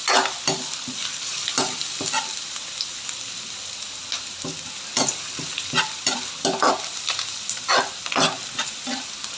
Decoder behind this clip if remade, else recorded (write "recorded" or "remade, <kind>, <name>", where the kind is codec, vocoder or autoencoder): recorded